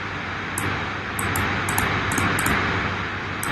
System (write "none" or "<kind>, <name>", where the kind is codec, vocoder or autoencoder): none